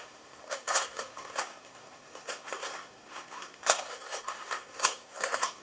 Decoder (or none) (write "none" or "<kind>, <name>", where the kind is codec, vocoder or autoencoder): codec, SNAC